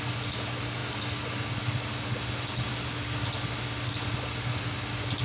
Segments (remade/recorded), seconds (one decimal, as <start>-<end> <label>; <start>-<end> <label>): 0.0-5.2 recorded